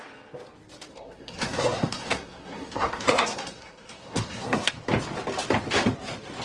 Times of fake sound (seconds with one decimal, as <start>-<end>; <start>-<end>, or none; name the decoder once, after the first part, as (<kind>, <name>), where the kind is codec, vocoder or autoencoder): 0.9-4.7 (codec, SNAC)